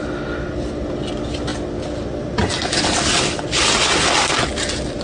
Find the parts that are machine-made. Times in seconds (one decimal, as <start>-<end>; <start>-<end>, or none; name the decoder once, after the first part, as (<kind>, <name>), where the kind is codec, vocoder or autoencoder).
none